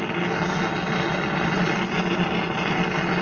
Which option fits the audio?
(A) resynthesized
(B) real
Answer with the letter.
B